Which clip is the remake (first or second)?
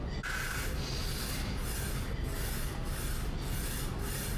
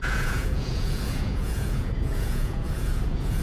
second